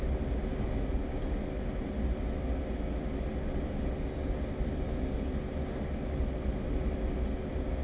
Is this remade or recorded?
recorded